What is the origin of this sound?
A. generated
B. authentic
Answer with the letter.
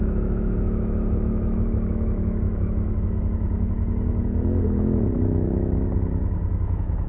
A